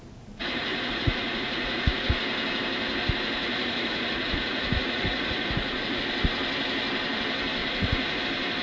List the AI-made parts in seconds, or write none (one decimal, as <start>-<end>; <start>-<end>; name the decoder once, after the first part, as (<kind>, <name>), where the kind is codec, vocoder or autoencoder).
0.4-2.2 (vocoder, Vocos); 3.4-6.0; 7.6-8.2